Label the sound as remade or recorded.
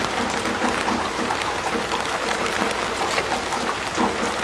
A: recorded